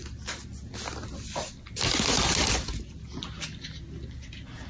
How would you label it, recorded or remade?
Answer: recorded